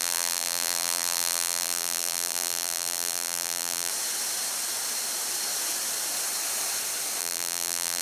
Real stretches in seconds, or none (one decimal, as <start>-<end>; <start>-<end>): 3.9-7.2